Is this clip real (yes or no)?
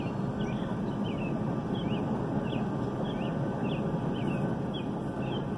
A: yes